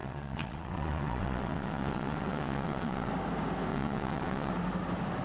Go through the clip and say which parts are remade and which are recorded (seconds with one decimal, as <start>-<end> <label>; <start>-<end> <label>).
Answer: 0.0-3.1 remade; 3.1-3.7 recorded; 3.7-4.5 remade; 4.5-5.2 recorded